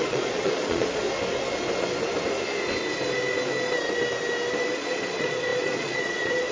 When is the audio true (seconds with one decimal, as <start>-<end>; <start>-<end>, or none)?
1.0-4.7